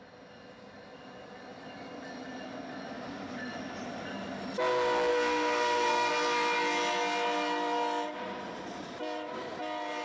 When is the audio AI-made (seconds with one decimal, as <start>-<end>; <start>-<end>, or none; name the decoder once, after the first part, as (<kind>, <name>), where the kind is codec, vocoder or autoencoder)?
5.1-6.1 (codec, SNAC)